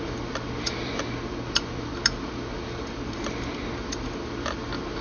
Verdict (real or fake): real